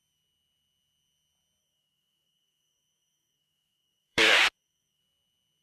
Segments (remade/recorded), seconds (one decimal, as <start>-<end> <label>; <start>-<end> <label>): 0.0-1.6 recorded; 1.6-5.0 remade; 5.0-5.6 recorded